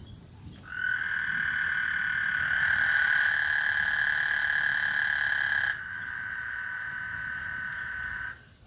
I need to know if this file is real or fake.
real